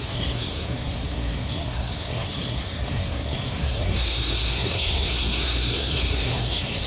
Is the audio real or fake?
fake